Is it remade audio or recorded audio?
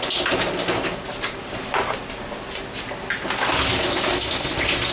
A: recorded